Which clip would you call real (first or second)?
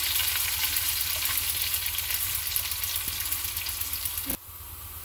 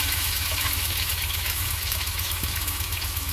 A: first